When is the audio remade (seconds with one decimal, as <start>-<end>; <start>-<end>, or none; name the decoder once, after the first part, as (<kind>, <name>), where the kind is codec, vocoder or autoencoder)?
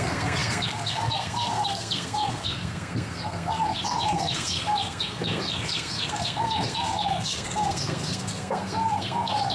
0.0-9.5 (codec, SNAC)